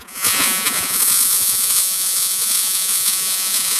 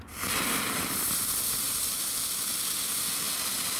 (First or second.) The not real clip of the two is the first